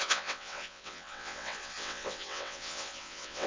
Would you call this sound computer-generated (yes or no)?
yes